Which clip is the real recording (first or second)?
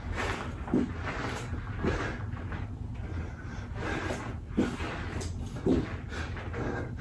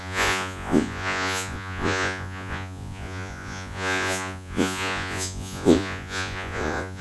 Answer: first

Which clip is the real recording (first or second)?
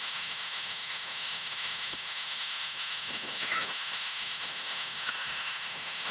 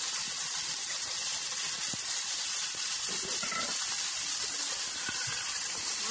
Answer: second